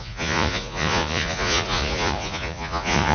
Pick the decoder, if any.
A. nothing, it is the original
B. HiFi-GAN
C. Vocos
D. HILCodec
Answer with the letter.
C